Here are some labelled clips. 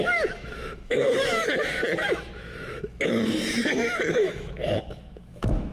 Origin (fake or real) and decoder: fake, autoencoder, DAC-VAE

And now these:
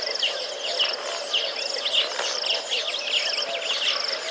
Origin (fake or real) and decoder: real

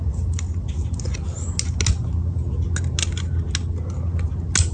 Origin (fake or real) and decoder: real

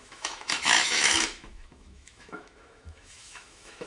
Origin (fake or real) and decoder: fake, autoencoder, DAC-VAE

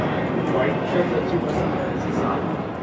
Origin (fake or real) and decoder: real